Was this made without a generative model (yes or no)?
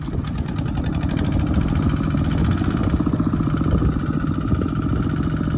yes